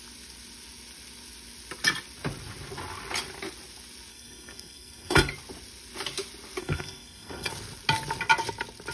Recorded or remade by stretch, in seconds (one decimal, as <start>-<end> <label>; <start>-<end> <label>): 0.0-4.1 recorded; 4.1-5.3 remade; 5.3-6.6 recorded; 6.6-7.5 remade; 7.5-8.9 recorded